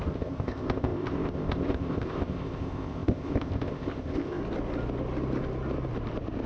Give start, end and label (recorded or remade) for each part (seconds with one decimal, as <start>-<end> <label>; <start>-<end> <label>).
0.0-4.4 remade; 4.4-6.5 recorded

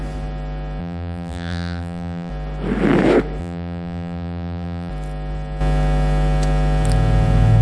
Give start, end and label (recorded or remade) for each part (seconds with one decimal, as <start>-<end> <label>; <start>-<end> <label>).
0.0-0.8 recorded; 0.8-2.3 remade; 2.3-3.4 recorded; 3.4-4.9 remade; 4.9-7.6 recorded